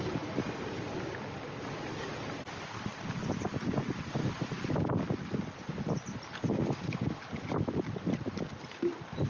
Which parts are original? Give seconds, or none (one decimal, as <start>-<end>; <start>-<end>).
0.0-0.6; 2.9-7.6